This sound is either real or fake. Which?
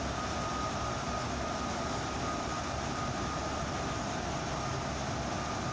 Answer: real